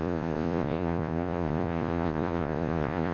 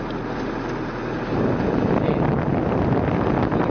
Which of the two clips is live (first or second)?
second